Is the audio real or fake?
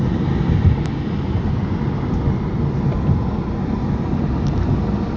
real